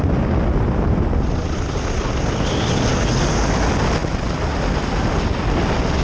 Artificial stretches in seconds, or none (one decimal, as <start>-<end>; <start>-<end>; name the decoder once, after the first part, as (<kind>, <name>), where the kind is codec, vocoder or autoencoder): none